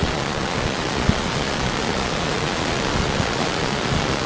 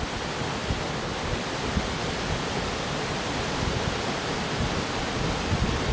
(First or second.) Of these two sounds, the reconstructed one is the first